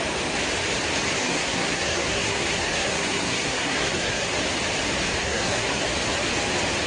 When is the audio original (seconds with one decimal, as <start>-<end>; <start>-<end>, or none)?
0.0-1.2; 4.4-5.2; 5.8-6.9